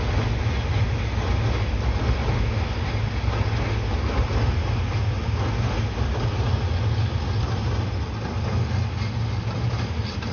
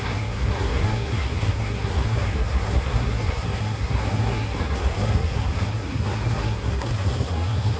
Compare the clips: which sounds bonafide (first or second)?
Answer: first